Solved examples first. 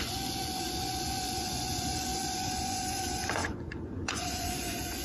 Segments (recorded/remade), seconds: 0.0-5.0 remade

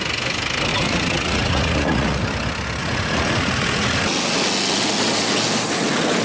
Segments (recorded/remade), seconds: 0.0-0.7 recorded; 0.7-2.2 remade; 2.2-2.8 recorded; 2.8-4.0 remade; 4.0-6.2 recorded

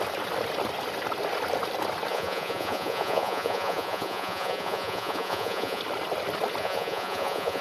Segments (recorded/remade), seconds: 0.0-2.1 recorded; 2.1-5.8 remade; 5.8-6.6 recorded; 6.6-7.6 remade

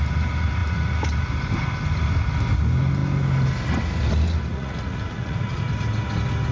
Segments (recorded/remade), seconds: 0.0-4.5 recorded; 4.5-5.6 remade; 5.6-6.5 recorded

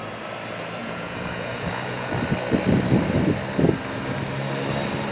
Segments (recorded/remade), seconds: 0.0-0.8 recorded; 0.8-2.1 remade; 2.1-5.1 recorded

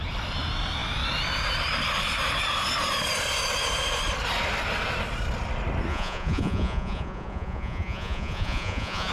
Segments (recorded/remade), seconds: 0.0-5.9 recorded; 5.9-9.1 remade

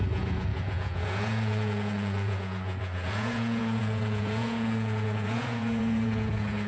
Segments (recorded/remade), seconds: 0.0-6.7 remade